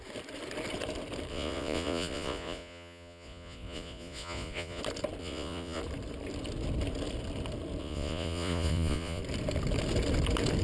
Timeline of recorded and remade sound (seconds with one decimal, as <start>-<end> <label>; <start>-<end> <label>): 0.0-1.3 recorded; 1.3-4.8 remade; 4.8-5.2 recorded; 5.2-5.8 remade; 5.8-7.8 recorded; 7.8-9.2 remade; 9.2-10.6 recorded